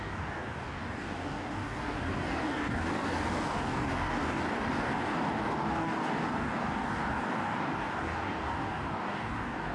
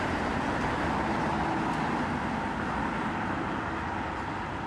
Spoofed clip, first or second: first